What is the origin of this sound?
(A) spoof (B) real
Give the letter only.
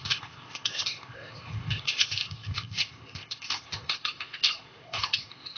A